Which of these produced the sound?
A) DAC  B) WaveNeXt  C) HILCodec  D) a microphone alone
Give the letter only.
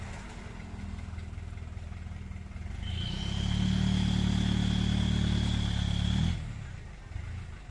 D